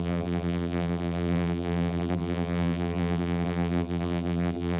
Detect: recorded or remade remade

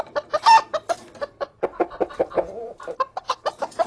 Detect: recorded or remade remade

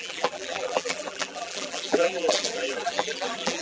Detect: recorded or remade remade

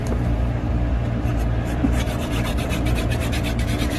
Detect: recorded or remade remade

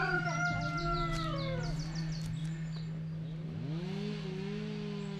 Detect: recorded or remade recorded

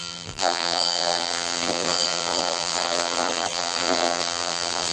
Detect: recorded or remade remade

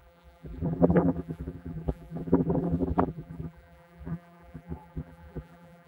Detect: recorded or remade remade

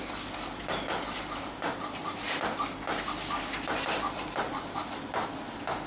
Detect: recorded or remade recorded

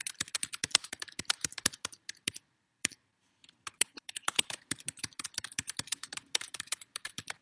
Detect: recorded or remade remade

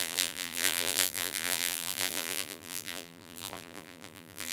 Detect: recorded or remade remade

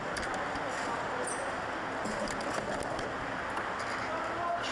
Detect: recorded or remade recorded